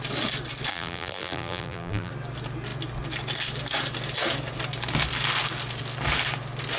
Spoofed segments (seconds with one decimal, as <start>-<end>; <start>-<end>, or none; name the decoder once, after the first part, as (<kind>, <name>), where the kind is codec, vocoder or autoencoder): 0.7-2.1 (vocoder, BigVGAN v2)